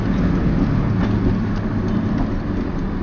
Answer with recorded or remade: recorded